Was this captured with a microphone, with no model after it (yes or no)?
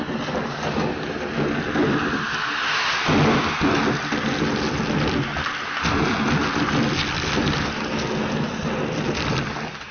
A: yes